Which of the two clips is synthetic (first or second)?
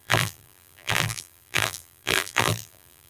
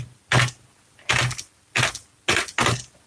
first